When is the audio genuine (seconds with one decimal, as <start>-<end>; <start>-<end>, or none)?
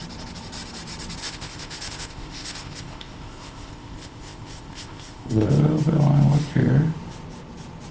0.0-1.2; 5.5-7.9